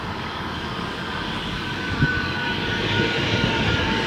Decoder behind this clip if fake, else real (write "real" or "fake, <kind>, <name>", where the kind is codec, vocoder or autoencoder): fake, codec, DAC